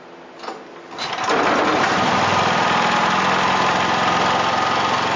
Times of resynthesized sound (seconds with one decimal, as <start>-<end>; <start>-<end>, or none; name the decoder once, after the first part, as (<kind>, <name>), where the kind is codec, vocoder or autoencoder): none